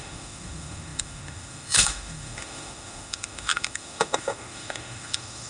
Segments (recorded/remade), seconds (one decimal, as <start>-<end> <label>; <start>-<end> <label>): 0.0-5.5 remade